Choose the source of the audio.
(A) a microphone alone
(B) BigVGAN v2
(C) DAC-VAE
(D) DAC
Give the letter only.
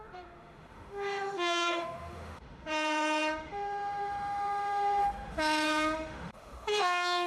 C